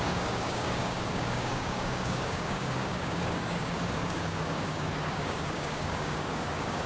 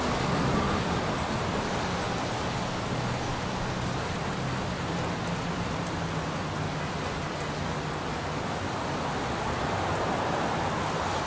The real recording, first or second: second